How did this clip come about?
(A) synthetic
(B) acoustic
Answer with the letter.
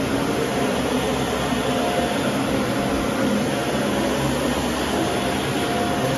B